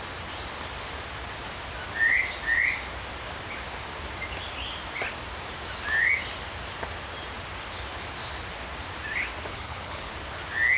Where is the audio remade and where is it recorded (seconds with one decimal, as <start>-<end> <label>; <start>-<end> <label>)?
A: 0.0-9.5 recorded; 9.5-10.1 remade; 10.1-10.8 recorded

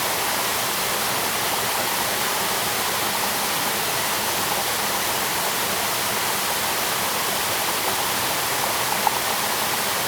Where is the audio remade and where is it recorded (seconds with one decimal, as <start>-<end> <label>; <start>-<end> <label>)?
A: 0.0-5.3 recorded; 5.3-6.2 remade; 6.2-10.1 recorded

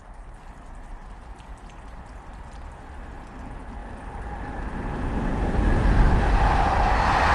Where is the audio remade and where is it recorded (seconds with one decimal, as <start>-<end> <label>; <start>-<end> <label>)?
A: 0.0-7.3 recorded

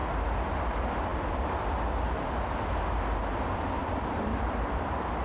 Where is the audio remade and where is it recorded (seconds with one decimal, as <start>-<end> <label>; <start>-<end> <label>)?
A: 0.0-1.1 recorded; 1.1-2.1 remade; 2.1-3.8 recorded; 3.8-5.2 remade

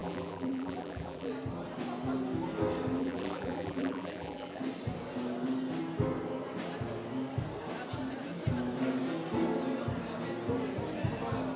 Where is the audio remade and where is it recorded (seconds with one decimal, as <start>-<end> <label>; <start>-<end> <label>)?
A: 0.0-1.3 remade; 1.3-3.0 recorded; 3.0-4.6 remade; 4.6-11.6 recorded

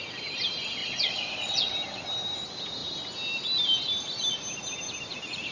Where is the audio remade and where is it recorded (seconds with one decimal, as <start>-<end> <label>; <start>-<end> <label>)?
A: 0.0-0.8 recorded; 0.8-1.7 remade; 1.7-5.5 recorded

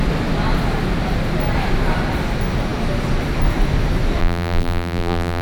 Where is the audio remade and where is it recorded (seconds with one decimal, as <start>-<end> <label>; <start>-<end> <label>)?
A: 0.0-4.2 recorded; 4.2-5.4 remade